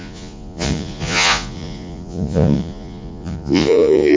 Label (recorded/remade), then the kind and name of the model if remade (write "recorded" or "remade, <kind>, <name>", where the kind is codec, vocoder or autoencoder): remade, vocoder, Vocos